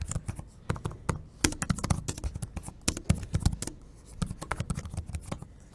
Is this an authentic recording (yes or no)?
yes